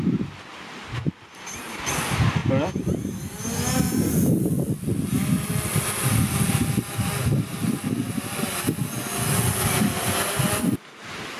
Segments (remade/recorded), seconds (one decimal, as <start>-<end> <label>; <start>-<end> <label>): 0.0-11.4 recorded